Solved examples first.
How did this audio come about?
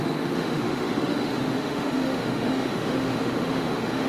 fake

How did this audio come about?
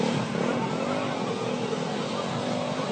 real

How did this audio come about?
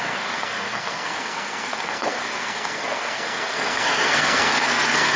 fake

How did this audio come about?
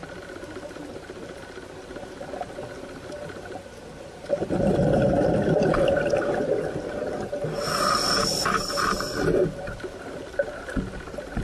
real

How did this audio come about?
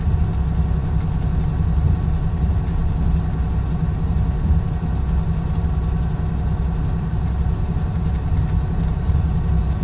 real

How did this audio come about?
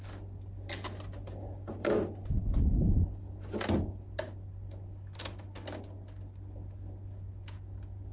real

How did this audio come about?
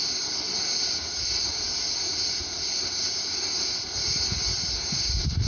real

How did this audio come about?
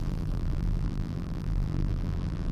fake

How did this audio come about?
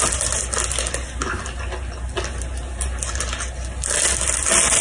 real